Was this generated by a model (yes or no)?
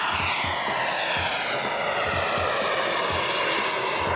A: no